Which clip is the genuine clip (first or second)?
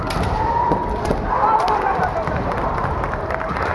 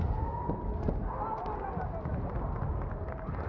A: second